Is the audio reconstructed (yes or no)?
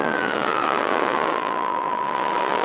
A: yes